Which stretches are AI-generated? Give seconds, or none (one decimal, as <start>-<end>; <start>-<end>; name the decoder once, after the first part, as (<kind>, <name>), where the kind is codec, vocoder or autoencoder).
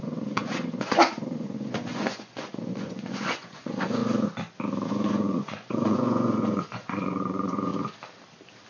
0.0-4.0 (vocoder, Vocos); 4.9-7.7